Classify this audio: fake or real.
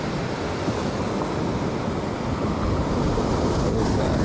real